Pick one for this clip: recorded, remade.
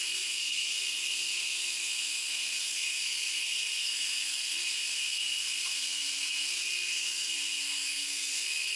remade